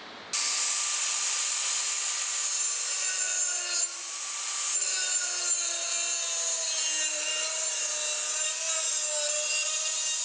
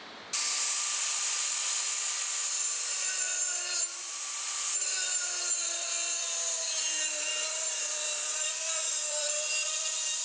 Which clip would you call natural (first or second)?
first